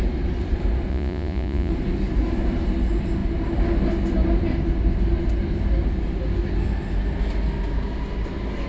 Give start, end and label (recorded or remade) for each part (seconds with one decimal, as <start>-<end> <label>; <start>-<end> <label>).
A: 0.0-0.9 recorded; 0.9-1.7 remade; 1.7-8.7 recorded